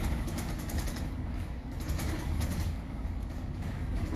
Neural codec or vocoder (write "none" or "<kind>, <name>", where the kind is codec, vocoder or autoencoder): codec, DAC